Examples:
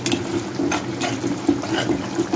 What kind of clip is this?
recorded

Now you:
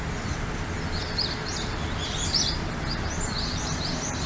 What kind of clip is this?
recorded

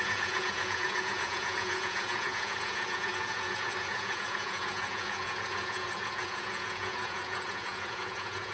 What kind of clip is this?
remade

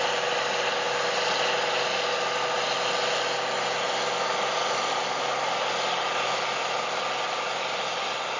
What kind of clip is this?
recorded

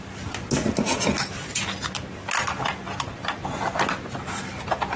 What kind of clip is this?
recorded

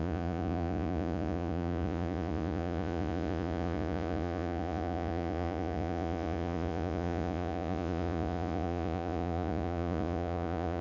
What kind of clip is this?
remade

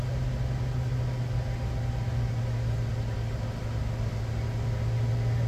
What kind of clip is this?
recorded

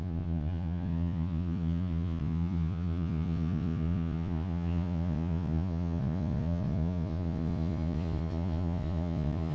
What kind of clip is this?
remade